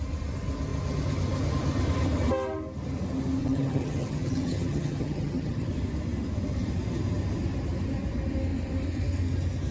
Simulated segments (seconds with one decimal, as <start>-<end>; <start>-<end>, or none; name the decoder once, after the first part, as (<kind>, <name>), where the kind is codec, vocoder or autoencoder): 3.4-5.7 (vocoder, HiFi-GAN)